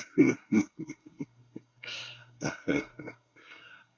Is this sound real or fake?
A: fake